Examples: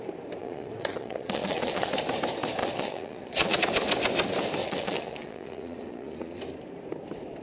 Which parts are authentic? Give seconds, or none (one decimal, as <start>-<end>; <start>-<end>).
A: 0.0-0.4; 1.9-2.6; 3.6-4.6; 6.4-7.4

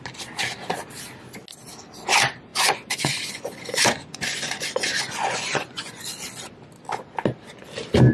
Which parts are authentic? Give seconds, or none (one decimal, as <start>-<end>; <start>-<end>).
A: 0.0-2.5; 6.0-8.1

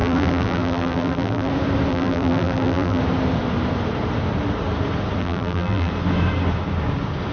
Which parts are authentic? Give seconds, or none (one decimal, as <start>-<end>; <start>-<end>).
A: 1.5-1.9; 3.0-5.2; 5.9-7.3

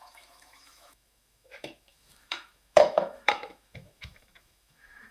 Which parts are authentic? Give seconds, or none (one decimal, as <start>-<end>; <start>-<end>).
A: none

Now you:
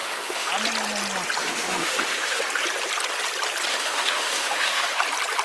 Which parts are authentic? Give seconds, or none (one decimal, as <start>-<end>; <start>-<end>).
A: 0.5-1.4; 2.4-3.7; 5.0-5.4

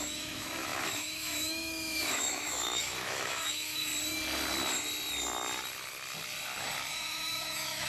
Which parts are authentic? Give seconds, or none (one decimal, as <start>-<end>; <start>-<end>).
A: 3.9-6.9